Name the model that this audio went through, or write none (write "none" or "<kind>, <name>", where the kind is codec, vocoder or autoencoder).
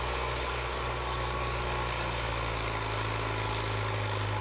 none